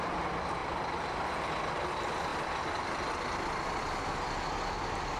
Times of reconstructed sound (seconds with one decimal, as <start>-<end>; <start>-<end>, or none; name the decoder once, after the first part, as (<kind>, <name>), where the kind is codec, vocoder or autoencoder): 2.3-4.3 (vocoder, BigVGAN v2)